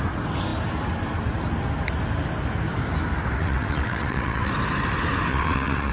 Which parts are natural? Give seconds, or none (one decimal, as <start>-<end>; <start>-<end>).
0.0-3.4; 4.5-5.3